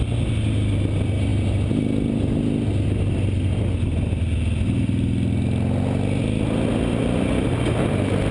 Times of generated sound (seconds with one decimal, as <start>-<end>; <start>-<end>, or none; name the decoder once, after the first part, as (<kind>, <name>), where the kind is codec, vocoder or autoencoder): none